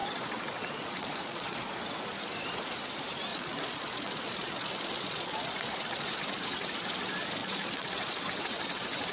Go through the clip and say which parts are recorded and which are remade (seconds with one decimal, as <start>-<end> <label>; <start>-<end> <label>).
0.0-1.7 remade; 1.7-3.3 recorded; 3.3-6.1 remade; 6.1-7.4 recorded; 7.4-8.2 remade; 8.2-9.1 recorded